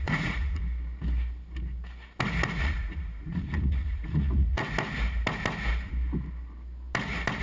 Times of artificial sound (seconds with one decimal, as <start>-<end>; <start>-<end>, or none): 0.0-0.6; 2.6-4.6